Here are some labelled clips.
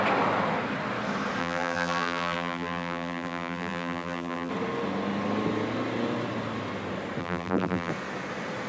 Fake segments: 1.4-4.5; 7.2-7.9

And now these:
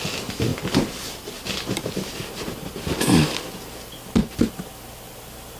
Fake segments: none

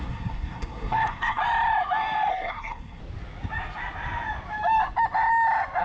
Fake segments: 0.0-1.4; 2.3-3.0

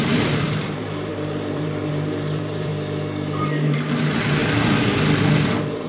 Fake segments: 0.0-2.7; 3.4-4.4; 5.2-5.9

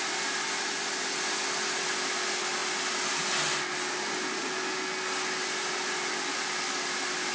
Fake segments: none

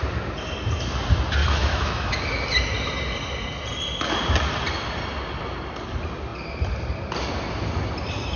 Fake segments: 1.4-2.2